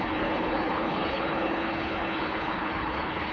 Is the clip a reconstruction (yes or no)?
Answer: yes